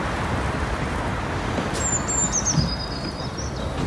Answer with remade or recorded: recorded